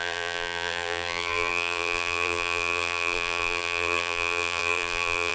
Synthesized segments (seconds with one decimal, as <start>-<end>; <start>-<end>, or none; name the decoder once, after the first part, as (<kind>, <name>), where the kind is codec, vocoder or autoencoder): 0.0-5.3 (vocoder, BigVGAN v2)